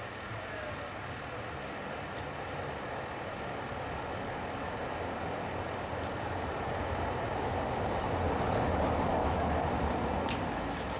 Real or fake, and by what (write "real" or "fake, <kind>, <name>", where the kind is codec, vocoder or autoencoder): real